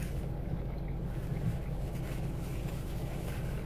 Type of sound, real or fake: fake